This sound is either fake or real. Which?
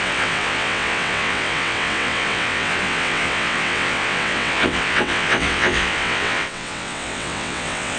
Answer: fake